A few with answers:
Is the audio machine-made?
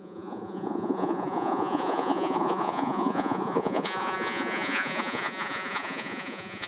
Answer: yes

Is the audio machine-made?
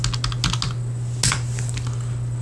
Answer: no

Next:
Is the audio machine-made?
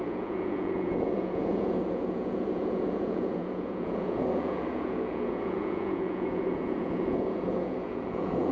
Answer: yes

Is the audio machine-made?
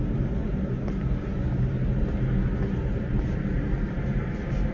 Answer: no